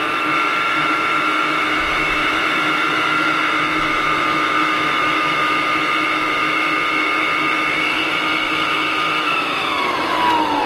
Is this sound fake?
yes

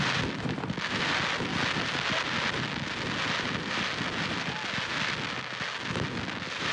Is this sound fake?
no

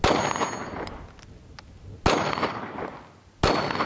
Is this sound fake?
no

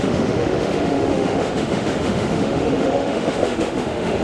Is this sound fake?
yes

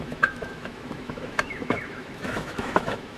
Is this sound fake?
yes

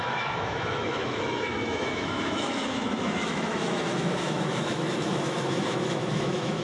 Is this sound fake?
yes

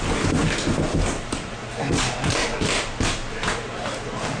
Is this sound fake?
no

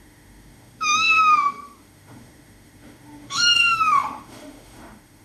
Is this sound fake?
yes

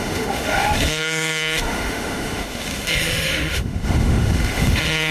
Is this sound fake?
yes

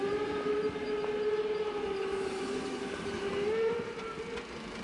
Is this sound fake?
no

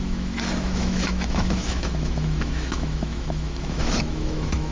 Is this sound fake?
yes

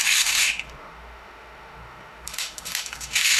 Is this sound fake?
yes